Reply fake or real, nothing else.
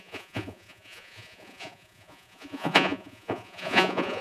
fake